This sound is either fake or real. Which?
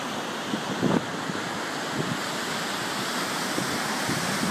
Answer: real